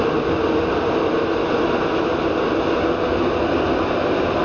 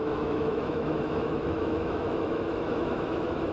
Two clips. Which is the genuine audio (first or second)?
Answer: first